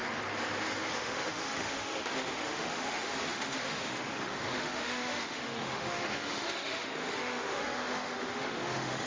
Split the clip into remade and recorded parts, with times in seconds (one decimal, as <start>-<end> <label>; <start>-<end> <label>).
0.0-0.9 recorded; 0.9-9.1 remade